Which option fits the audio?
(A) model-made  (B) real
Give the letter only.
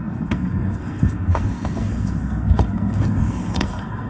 A